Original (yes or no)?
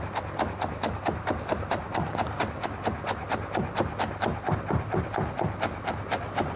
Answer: yes